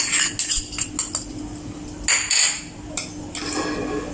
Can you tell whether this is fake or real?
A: real